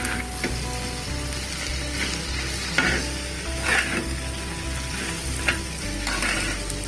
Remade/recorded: recorded